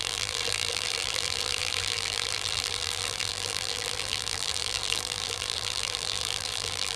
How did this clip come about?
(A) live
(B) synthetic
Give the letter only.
B